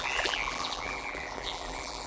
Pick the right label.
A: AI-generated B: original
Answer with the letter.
A